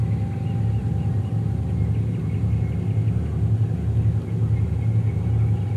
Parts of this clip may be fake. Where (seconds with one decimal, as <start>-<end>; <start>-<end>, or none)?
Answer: 0.8-1.3